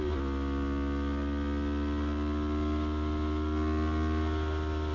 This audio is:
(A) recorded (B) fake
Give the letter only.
A